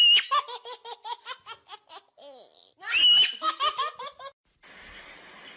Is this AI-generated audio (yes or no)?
no